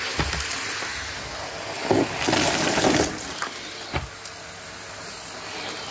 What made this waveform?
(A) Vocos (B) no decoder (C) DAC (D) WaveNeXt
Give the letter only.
B